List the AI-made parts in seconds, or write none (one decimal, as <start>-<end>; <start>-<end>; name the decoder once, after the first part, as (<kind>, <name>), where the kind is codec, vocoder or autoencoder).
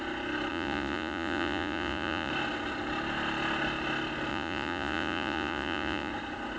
0.5-2.3 (vocoder, Vocos); 4.3-6.1